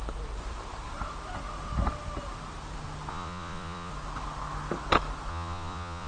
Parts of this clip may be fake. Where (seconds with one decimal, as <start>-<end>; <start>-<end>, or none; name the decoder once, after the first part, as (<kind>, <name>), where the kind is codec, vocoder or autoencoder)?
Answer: 3.1-3.9 (vocoder, Vocos); 5.3-6.1